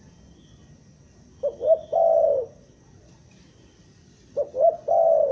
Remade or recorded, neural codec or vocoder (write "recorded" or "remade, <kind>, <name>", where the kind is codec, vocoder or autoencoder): recorded